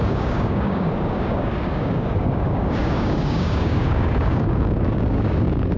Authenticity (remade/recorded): remade